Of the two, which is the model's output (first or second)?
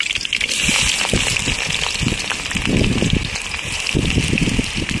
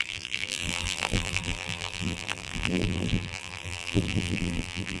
second